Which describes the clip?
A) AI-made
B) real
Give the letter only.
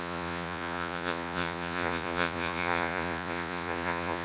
A